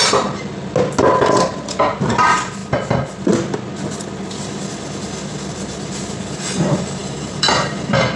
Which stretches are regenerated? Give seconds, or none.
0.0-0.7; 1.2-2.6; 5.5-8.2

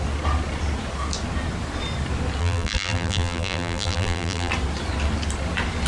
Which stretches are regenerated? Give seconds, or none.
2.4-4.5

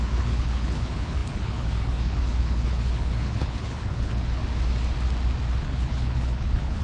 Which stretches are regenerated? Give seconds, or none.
0.0-4.4; 5.5-6.8

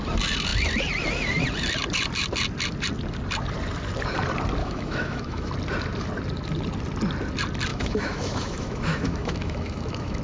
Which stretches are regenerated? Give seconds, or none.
4.6-5.5; 7.7-10.2

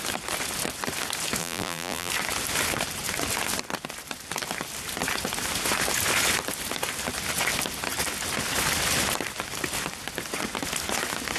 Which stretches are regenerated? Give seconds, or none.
1.4-2.1

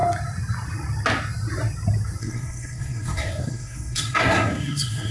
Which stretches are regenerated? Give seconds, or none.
2.2-5.1

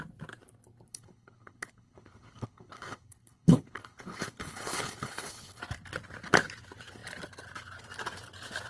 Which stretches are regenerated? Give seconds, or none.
0.9-5.6

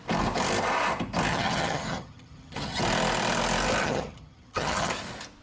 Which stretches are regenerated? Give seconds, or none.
1.3-2.8; 3.8-4.9